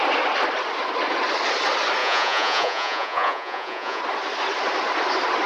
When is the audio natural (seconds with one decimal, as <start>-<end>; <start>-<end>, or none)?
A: 0.0-2.0; 4.0-5.5